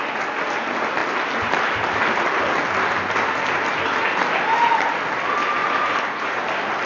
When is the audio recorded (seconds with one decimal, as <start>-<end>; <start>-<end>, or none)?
0.0-5.6; 6.4-6.9